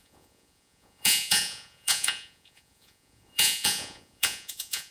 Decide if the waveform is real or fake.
fake